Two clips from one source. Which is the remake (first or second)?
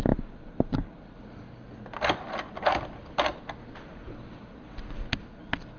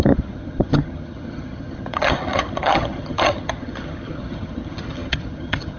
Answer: second